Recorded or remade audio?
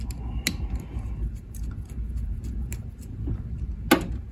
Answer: recorded